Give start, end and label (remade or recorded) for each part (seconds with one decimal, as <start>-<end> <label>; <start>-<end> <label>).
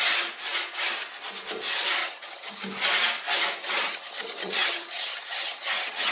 0.0-2.0 recorded; 2.0-2.6 remade; 2.6-3.6 recorded; 3.6-6.1 remade